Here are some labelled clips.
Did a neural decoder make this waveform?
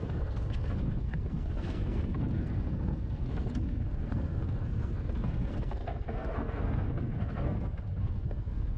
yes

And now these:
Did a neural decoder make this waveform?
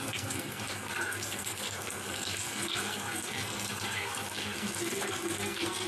yes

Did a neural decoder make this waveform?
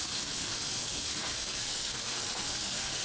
yes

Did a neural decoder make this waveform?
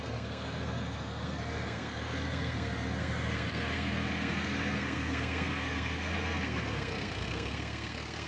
yes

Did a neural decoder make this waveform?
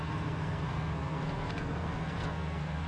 yes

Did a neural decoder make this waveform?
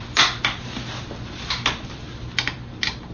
no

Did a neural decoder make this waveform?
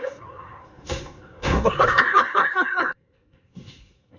yes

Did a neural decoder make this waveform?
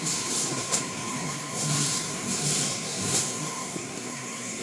yes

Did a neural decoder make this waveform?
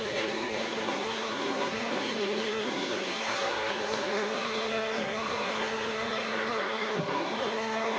yes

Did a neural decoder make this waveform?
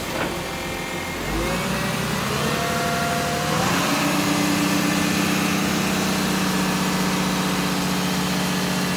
no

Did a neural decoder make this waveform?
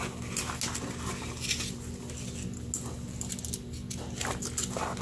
no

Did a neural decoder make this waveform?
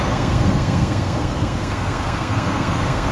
yes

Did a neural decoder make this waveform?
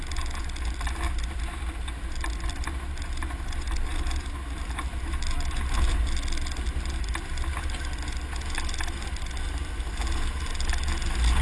no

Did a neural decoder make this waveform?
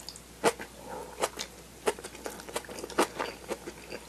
no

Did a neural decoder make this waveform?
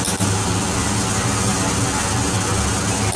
no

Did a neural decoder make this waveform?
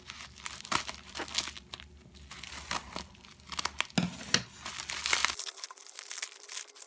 no